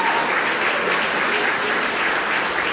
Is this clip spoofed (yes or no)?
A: no